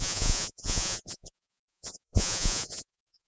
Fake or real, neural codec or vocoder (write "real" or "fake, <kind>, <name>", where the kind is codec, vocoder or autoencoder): fake, vocoder, Vocos